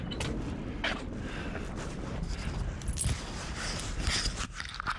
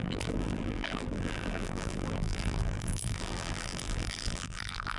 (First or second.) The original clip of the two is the first